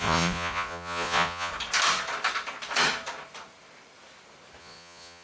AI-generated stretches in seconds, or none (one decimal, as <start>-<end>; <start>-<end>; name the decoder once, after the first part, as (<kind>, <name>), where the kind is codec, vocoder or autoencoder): 0.0-1.5 (vocoder, Vocos); 4.6-5.2